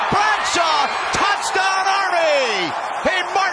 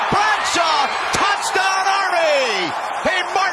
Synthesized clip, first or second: second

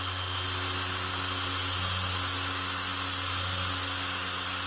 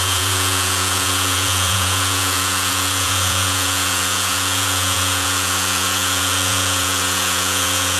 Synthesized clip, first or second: second